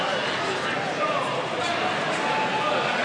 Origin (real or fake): real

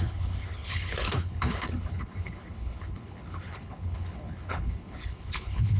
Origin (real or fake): fake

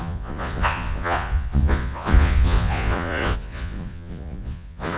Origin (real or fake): fake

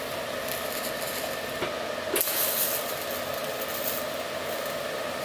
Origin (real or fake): real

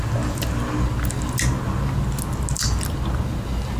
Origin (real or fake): real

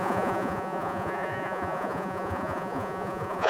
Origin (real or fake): fake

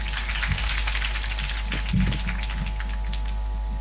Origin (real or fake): real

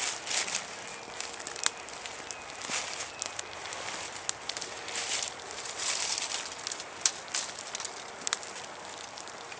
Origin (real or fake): real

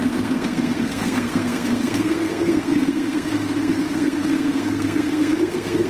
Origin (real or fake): fake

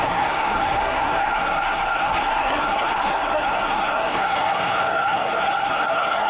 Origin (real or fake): fake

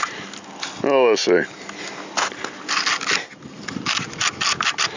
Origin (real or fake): real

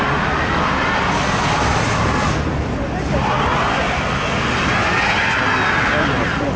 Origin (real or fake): real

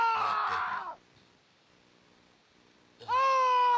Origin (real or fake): real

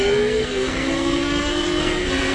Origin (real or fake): fake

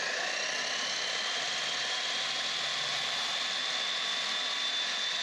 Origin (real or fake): real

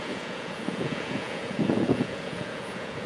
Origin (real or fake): fake